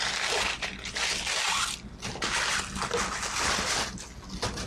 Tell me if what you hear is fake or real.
real